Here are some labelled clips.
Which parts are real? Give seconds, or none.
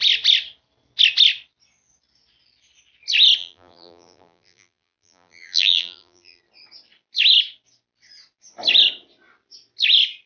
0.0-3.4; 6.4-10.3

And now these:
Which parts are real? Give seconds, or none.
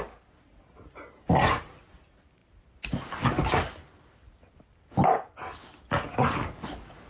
0.0-7.1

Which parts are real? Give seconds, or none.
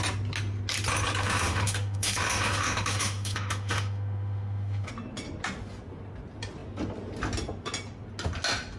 0.0-1.2; 4.9-8.8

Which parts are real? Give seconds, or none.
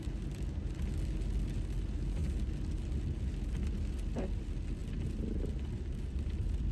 0.0-6.7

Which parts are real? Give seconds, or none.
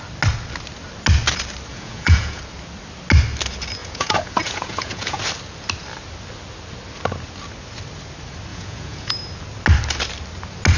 0.0-1.7; 2.4-3.8; 5.2-8.5; 9.1-10.8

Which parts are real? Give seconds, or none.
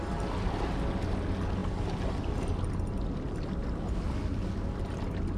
0.0-5.4